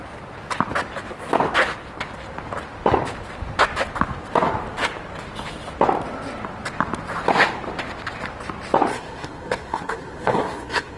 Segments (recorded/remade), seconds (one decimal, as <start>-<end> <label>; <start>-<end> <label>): 0.0-8.9 recorded; 8.9-11.0 remade